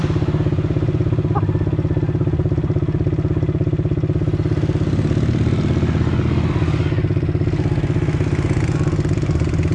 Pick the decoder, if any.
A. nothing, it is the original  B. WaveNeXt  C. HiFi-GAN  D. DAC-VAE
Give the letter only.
A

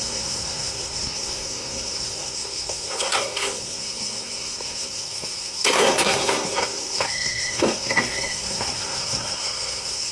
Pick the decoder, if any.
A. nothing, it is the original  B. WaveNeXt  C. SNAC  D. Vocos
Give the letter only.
C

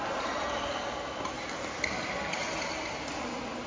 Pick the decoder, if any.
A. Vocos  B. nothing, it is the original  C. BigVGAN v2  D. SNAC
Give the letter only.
B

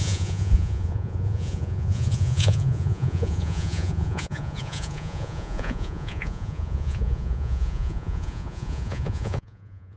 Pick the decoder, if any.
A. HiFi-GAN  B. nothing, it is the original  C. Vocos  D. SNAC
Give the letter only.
C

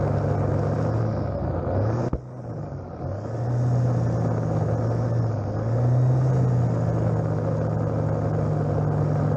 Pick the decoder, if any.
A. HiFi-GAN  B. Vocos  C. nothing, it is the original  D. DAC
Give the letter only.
C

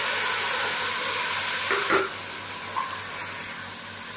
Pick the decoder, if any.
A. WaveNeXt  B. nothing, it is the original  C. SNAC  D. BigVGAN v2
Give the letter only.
B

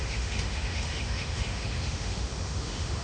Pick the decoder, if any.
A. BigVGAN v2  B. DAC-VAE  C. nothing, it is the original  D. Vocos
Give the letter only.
B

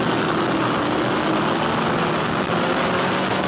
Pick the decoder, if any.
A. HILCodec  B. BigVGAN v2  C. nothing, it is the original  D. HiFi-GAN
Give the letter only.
C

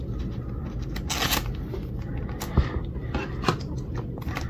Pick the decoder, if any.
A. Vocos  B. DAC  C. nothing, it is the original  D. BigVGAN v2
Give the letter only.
C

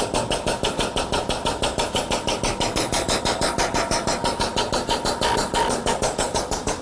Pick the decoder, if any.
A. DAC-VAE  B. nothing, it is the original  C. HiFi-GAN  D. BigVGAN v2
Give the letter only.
B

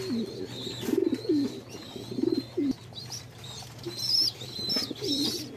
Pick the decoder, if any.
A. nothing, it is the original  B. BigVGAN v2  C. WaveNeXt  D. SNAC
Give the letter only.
A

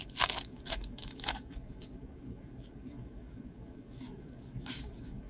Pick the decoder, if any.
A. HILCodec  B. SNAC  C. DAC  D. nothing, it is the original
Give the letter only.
C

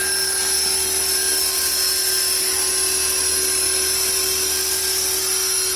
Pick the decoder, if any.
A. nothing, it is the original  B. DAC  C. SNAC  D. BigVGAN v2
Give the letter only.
A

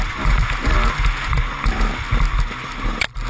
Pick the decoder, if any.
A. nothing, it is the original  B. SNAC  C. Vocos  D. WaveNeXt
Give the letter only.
A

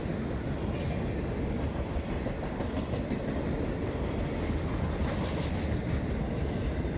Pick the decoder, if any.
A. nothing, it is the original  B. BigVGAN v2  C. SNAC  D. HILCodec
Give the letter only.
A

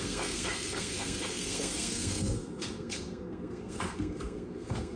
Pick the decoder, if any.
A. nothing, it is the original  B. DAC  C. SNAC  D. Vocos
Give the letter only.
C